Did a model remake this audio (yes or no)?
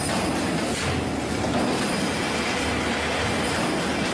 no